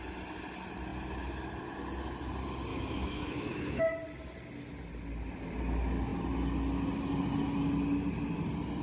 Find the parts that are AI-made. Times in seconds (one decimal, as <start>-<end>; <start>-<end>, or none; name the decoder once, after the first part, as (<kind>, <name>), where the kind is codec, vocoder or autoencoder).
2.7-3.8 (autoencoder, DAC-VAE)